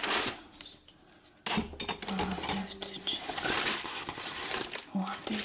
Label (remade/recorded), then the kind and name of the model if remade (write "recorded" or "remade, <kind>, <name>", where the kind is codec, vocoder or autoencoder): recorded